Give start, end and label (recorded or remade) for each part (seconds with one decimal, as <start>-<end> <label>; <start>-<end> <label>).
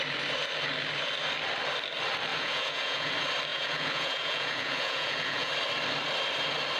0.0-2.3 recorded; 2.3-3.1 remade; 3.1-3.5 recorded; 3.5-5.5 remade; 5.5-6.8 recorded